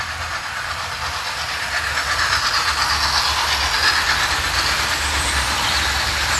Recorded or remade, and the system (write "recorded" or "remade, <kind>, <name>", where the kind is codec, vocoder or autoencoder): recorded